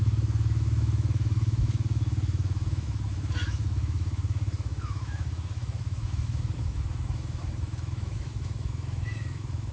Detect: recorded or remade remade